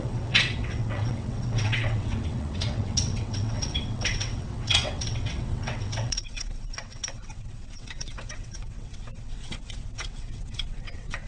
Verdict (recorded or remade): remade